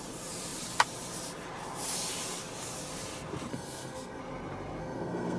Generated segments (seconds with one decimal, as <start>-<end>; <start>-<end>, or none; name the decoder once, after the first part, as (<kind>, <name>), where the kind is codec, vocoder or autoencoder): 3.5-4.2 (codec, SNAC); 4.8-5.4